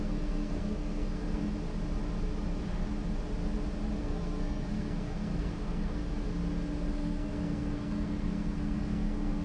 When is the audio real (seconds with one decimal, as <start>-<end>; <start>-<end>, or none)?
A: 1.4-4.0; 6.0-6.9